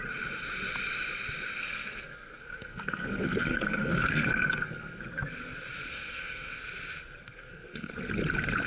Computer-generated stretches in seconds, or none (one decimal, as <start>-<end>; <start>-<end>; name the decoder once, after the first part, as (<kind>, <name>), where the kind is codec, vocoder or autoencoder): 1.6-5.0 (codec, SNAC); 5.9-6.6; 7.2-7.9